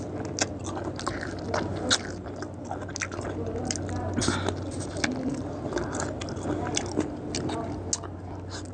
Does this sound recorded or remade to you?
recorded